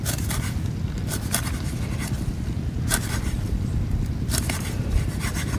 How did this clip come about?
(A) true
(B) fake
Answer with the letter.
A